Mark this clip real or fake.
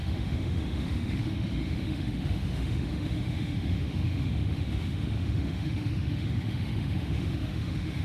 fake